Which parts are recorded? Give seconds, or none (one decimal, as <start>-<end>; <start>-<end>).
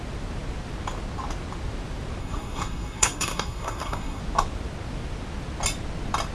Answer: 0.0-2.2; 4.2-6.3